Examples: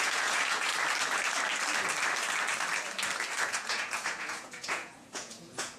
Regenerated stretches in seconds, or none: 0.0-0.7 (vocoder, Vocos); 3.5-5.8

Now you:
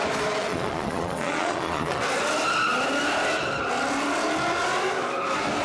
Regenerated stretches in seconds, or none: 0.4-2.0 (vocoder, Vocos)

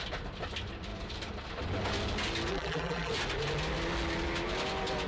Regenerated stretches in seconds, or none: 2.5-3.1 (vocoder, BigVGAN v2)

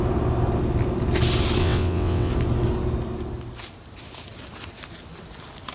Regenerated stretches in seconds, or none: 1.6-2.3 (vocoder, WaveNeXt)

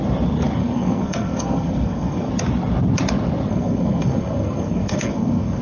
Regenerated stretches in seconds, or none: 0.6-2.3 (codec, SNAC); 3.5-5.6

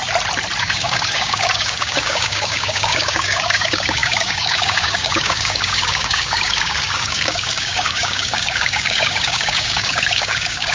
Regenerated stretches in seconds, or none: 0.6-10.7 (codec, DAC)